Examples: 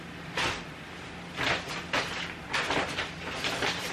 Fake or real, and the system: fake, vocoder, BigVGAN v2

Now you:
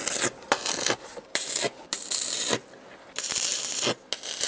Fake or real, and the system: real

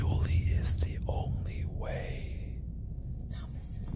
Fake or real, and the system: real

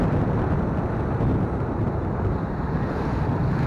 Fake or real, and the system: real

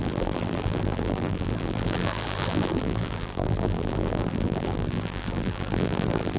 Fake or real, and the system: fake, vocoder, BigVGAN v2